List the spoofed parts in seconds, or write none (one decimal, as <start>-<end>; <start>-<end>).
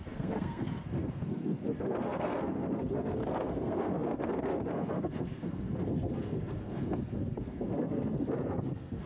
0.0-9.1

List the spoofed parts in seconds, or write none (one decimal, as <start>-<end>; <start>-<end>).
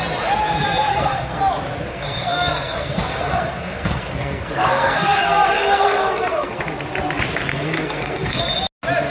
0.9-1.4; 1.9-6.6; 7.5-8.4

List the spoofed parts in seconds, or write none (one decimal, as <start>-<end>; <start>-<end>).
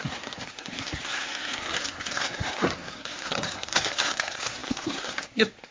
0.0-5.7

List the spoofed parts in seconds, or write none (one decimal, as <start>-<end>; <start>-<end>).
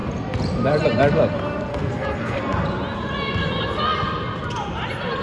1.7-2.4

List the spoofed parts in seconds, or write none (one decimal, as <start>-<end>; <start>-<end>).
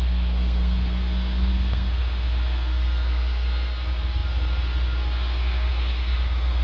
0.0-6.6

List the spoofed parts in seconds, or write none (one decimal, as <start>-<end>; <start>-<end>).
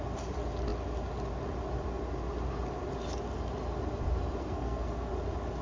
4.4-5.1